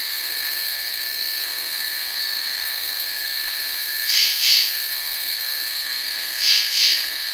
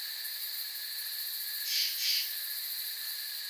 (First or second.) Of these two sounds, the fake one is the first